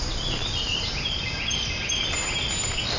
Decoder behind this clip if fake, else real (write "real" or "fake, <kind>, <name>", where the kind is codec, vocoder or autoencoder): real